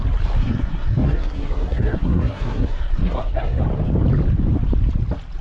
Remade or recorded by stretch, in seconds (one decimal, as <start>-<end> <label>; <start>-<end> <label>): 0.0-0.4 recorded; 0.4-3.6 remade; 3.6-5.4 recorded